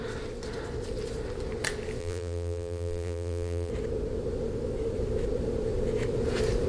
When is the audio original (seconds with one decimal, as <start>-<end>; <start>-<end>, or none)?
0.0-2.0; 3.7-6.7